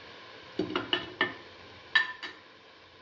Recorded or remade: recorded